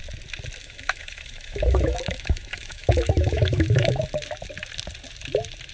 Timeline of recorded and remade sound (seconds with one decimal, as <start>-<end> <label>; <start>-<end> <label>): 0.0-0.6 recorded; 0.6-4.0 remade; 4.0-5.7 recorded